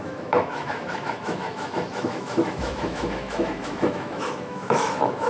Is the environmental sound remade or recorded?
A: remade